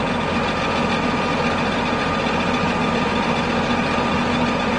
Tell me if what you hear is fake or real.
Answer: real